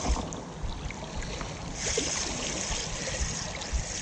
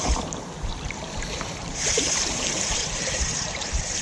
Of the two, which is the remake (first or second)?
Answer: second